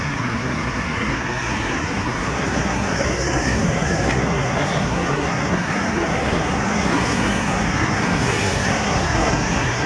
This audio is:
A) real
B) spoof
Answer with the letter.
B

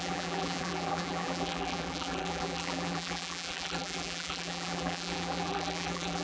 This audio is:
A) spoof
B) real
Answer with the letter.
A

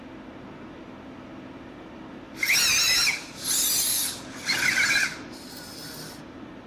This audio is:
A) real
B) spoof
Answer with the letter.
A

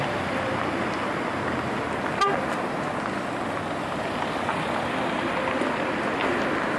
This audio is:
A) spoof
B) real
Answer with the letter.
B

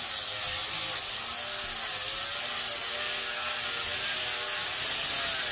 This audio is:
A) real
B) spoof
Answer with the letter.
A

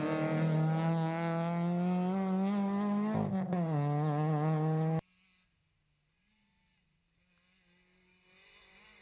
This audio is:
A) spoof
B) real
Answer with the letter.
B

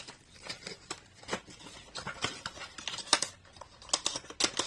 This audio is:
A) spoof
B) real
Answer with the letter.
B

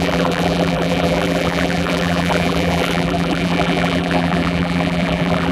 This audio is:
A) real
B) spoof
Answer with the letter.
B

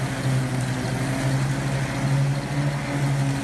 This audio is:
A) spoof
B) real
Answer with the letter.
B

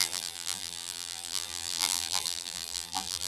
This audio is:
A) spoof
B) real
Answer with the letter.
A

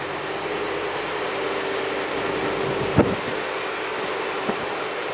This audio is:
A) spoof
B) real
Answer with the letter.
B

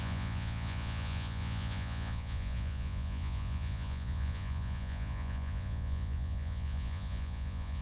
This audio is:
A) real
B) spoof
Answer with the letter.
B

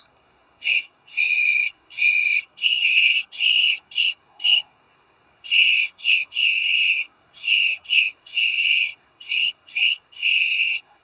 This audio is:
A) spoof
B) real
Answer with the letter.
A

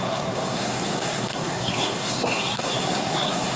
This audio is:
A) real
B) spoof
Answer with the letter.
B